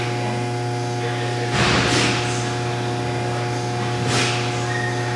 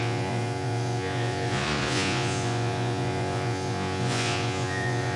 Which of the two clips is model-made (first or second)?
second